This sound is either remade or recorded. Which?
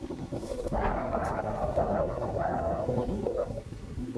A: remade